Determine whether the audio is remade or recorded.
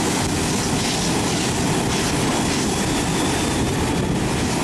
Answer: recorded